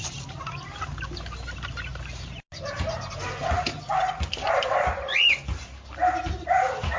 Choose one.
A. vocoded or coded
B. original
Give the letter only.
B